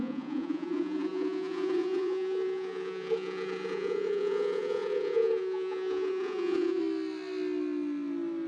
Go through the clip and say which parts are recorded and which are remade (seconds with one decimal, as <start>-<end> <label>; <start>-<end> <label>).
0.0-6.8 remade; 6.8-8.5 recorded